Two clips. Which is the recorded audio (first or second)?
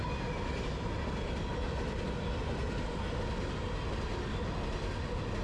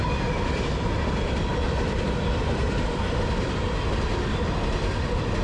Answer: first